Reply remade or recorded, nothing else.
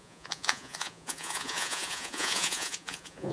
remade